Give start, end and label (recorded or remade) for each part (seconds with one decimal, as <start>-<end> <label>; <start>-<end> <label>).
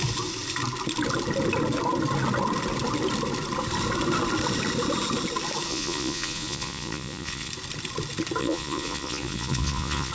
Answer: 0.0-5.7 recorded; 5.7-7.5 remade; 7.5-8.4 recorded; 8.4-10.1 remade